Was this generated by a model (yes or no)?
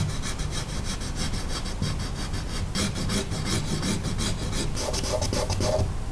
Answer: no